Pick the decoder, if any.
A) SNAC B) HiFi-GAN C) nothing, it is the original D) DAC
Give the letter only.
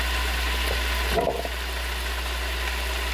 C